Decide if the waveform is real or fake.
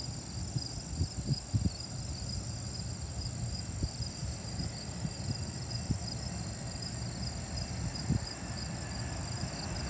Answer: real